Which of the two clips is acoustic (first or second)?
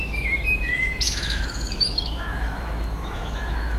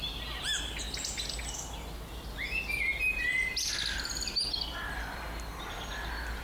second